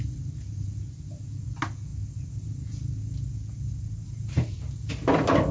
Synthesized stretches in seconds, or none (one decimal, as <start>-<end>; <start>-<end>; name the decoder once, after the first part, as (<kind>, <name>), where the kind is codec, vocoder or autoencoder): none